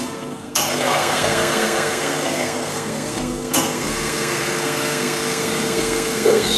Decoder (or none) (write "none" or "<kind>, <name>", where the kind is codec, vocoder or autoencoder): codec, SNAC